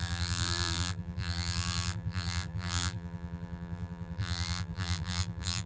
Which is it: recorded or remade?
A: remade